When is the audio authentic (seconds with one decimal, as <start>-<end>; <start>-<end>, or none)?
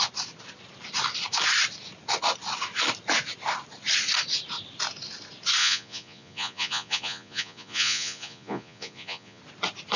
0.0-5.6; 9.4-10.0